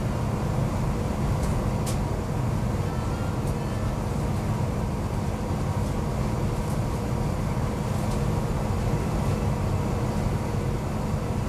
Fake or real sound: real